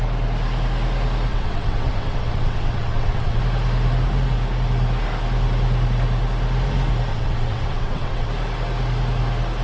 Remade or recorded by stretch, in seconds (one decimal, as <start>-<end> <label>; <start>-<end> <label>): 0.0-1.3 recorded; 1.3-3.4 remade; 3.4-7.1 recorded; 7.1-8.3 remade; 8.3-9.6 recorded